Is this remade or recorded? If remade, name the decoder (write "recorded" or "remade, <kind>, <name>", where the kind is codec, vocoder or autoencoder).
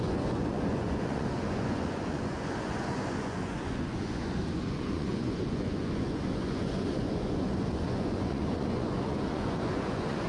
remade, vocoder, Vocos